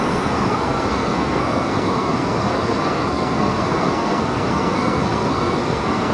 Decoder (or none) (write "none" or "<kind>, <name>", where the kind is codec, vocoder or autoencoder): codec, SNAC